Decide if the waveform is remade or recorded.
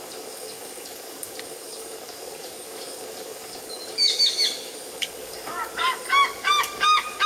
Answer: remade